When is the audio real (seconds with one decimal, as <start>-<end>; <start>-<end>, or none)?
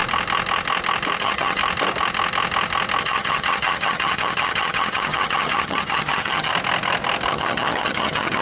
0.0-1.2; 1.6-3.0; 6.5-7.3